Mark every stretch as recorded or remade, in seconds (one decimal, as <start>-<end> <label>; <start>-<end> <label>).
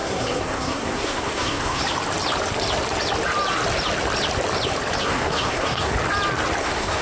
0.0-1.8 remade; 1.8-5.0 recorded; 5.0-5.9 remade; 5.9-6.6 recorded; 6.6-7.0 remade